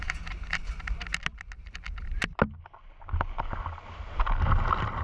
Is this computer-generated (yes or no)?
no